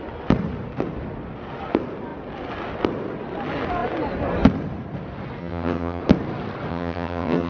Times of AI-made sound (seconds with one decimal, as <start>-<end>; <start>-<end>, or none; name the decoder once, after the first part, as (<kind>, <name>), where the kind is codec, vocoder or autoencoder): 5.4-6.0 (vocoder, HiFi-GAN); 6.7-7.5